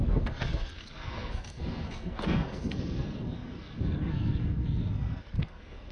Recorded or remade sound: remade